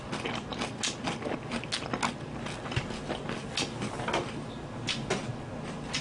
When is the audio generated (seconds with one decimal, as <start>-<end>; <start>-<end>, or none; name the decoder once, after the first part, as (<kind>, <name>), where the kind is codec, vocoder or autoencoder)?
none